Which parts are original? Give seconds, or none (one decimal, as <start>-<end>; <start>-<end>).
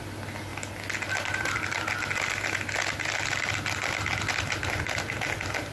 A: 0.0-5.7